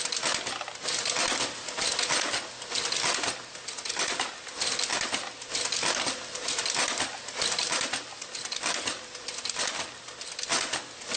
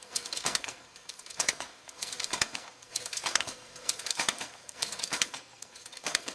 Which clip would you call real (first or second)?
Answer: first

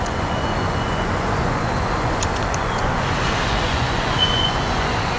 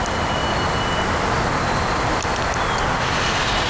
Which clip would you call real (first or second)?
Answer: second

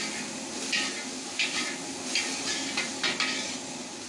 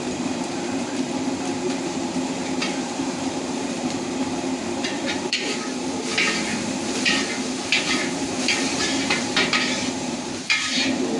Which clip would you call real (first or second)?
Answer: first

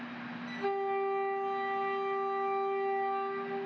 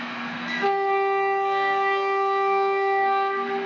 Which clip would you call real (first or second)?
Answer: first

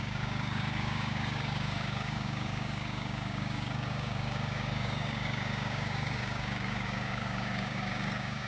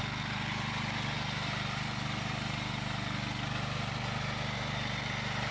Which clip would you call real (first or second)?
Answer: second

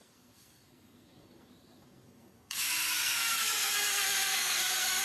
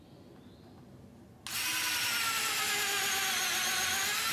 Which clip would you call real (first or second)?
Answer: second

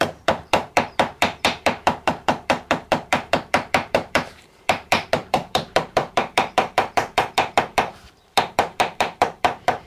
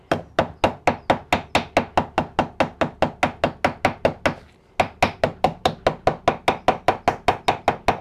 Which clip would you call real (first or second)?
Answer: second